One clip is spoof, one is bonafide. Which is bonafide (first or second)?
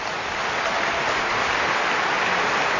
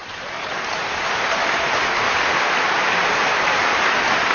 first